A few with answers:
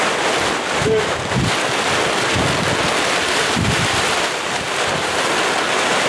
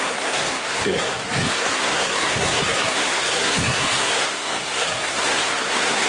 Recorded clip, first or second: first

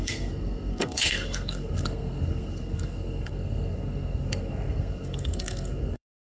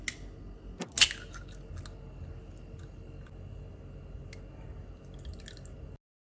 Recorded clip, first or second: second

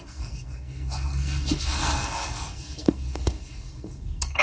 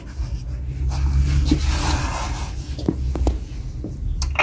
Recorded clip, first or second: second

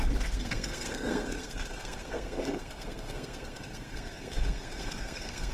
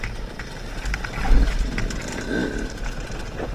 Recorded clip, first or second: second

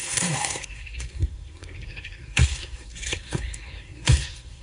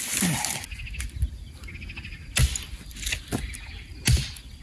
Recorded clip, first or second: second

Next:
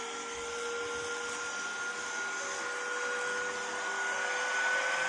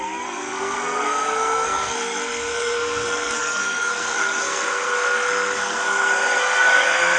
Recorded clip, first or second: first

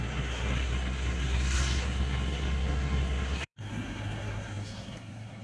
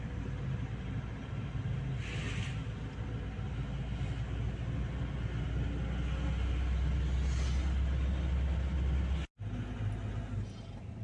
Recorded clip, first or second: second